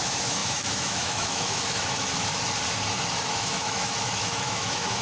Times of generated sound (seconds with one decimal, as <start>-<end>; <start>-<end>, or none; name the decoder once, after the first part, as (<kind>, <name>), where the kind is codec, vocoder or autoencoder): 0.0-2.3 (autoencoder, DAC-VAE); 3.3-5.0